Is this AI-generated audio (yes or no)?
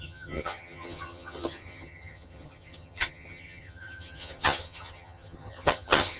yes